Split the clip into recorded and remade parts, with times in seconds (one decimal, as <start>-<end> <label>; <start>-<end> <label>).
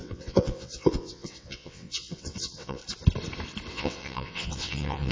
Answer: 0.0-2.8 remade; 2.8-3.7 recorded; 3.7-5.1 remade